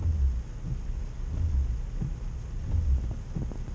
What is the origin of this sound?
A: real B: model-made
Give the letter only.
A